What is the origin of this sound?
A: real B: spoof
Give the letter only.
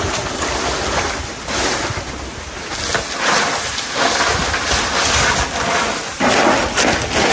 A